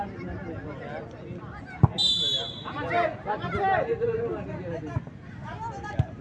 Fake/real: real